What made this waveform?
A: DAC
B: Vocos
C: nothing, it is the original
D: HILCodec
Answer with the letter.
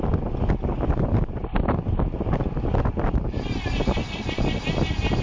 C